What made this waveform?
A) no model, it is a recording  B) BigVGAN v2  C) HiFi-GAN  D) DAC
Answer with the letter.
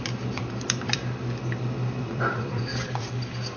B